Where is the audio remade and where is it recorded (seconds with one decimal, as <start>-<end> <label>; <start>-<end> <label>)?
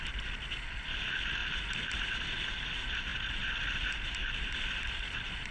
0.0-1.4 recorded; 1.4-2.0 remade; 2.0-3.1 recorded; 3.1-5.5 remade